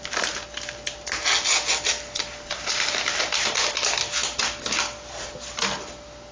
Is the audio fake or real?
real